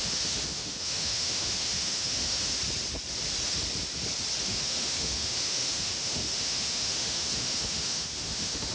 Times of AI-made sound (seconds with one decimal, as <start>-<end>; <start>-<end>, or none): 0.0-2.6; 4.4-8.7